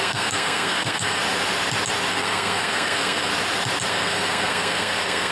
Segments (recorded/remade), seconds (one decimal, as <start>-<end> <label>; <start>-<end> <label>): 0.0-1.2 remade; 1.2-2.1 recorded; 2.1-3.3 remade; 3.3-3.9 recorded; 3.9-5.3 remade